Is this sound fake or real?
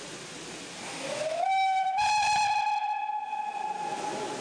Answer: real